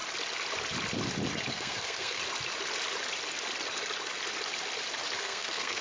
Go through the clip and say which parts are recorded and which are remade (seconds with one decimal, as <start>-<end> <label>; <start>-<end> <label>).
0.0-1.5 recorded; 1.5-2.2 remade; 2.2-5.2 recorded; 5.2-5.8 remade